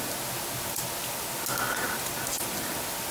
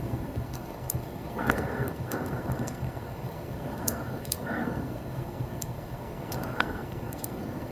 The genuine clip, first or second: first